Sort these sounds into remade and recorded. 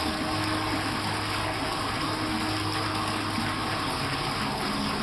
recorded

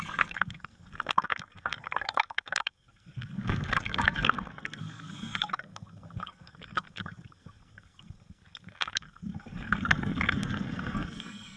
remade